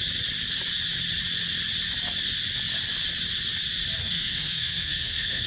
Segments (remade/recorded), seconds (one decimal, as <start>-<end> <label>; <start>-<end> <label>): 0.0-4.0 recorded; 4.0-5.5 remade